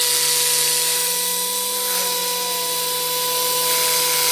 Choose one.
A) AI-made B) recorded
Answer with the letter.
B